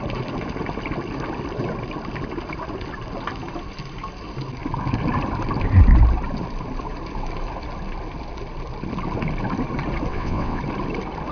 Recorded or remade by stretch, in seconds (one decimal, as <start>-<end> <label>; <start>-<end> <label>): 0.0-10.1 recorded; 10.1-10.6 remade; 10.6-11.3 recorded